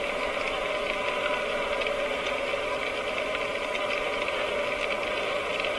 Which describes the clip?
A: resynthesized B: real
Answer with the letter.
B